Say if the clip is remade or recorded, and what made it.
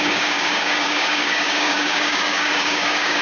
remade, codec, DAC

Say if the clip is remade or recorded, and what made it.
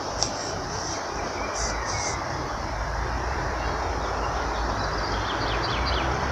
recorded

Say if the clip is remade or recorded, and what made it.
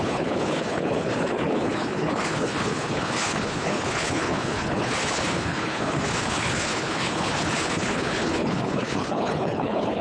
remade, codec, HILCodec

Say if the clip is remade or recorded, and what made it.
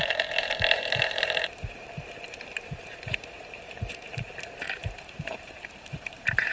remade, vocoder, BigVGAN v2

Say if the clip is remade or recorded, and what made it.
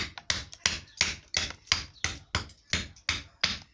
recorded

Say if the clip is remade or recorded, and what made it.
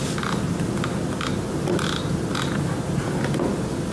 recorded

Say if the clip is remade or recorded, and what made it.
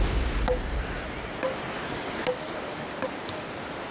recorded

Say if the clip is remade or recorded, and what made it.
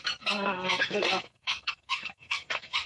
remade, codec, SNAC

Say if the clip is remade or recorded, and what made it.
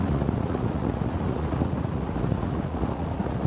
remade, vocoder, Vocos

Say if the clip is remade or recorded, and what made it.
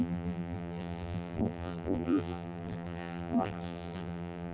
remade, vocoder, BigVGAN v2